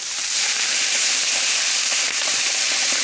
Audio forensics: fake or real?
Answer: fake